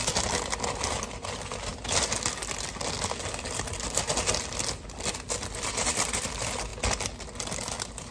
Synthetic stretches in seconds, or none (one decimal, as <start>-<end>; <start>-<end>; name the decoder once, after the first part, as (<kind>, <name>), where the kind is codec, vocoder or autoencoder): none